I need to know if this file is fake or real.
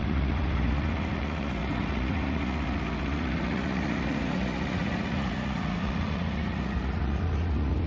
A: fake